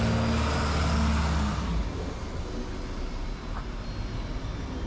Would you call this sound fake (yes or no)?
no